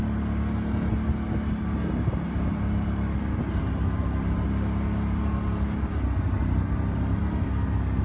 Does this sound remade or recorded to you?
recorded